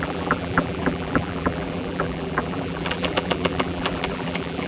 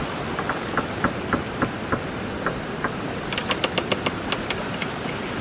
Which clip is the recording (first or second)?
second